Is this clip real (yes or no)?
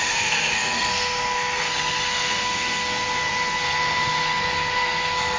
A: no